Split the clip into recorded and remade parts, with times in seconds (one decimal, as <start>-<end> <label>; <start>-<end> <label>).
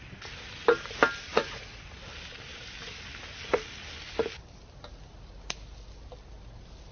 0.0-1.3 recorded; 1.3-2.0 remade; 2.0-6.9 recorded